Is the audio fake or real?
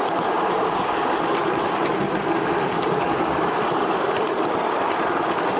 real